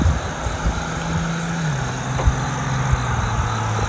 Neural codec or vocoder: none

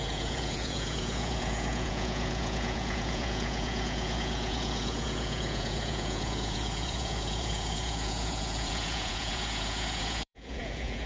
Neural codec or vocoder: vocoder, Vocos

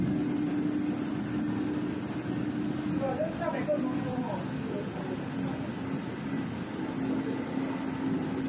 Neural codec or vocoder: none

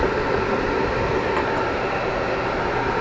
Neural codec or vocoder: none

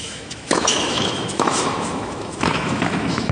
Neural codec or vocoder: autoencoder, DAC-VAE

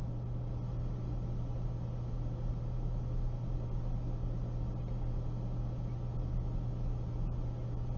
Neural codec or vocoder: none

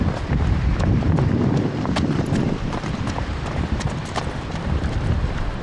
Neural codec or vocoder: vocoder, BigVGAN v2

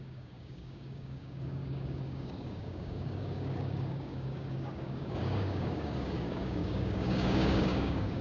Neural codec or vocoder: codec, DAC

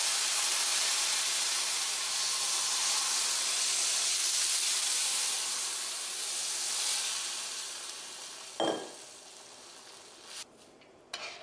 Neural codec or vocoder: none